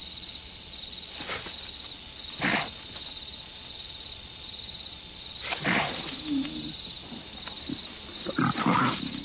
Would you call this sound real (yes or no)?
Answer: yes